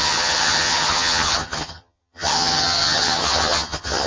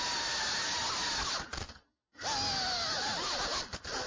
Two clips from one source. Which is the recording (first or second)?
second